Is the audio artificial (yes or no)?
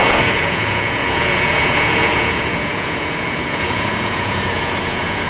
yes